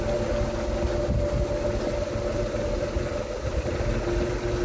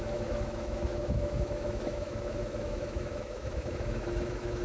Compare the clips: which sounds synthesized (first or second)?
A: second